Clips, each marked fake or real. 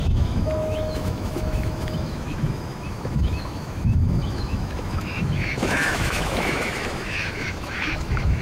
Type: fake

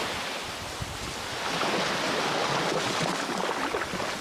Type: real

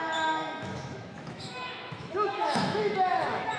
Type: fake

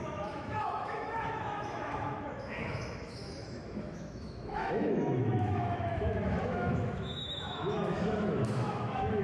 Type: fake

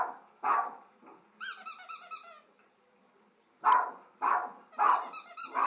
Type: real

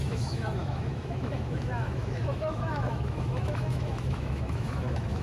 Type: fake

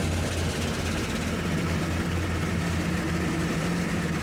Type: real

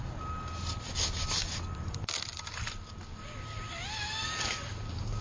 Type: real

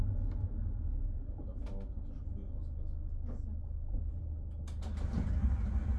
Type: real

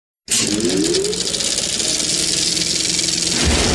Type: real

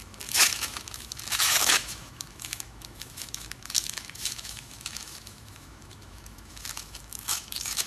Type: fake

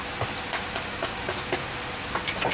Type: real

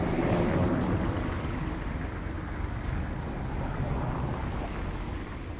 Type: real